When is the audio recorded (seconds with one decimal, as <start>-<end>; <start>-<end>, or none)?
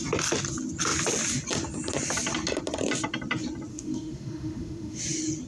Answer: 0.0-3.7; 5.0-5.5